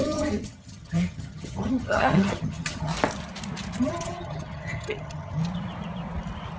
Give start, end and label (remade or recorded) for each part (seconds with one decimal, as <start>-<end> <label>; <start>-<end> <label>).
0.0-2.9 remade; 2.9-3.8 recorded; 3.8-5.4 remade; 5.4-6.6 recorded